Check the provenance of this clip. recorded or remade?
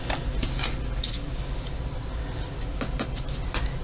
recorded